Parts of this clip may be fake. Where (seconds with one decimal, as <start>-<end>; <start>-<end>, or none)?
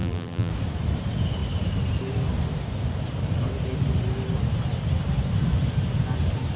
0.0-0.5